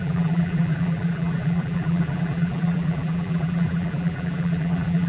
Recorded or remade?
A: remade